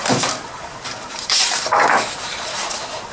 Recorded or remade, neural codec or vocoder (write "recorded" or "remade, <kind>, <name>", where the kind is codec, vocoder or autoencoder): remade, vocoder, BigVGAN v2